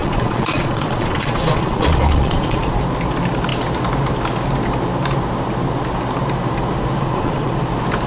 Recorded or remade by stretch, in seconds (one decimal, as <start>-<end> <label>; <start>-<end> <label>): 0.0-2.8 remade; 2.8-7.0 recorded; 7.0-7.5 remade; 7.5-8.1 recorded